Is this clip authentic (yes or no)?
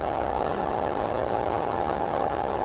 no